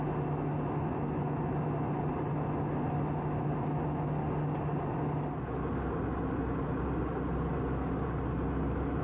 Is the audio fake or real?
real